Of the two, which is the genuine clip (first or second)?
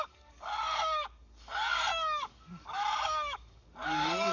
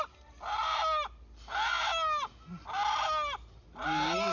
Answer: second